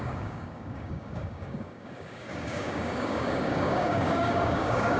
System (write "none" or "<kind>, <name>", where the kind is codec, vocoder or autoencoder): codec, DAC